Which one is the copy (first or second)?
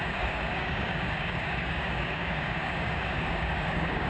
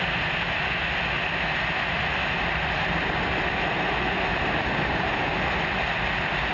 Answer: first